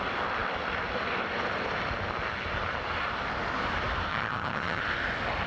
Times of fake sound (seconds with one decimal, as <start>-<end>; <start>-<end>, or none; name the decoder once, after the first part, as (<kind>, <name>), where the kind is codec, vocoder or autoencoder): 4.1-4.8 (vocoder, HiFi-GAN)